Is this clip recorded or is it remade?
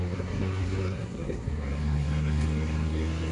remade